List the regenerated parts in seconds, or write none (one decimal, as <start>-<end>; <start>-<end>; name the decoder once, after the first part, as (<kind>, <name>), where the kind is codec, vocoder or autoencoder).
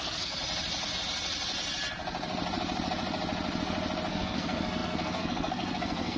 0.0-0.4 (codec, SNAC); 4.1-6.2